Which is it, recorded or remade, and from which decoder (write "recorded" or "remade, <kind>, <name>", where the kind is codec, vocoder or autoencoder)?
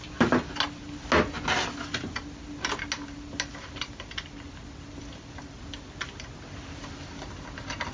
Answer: recorded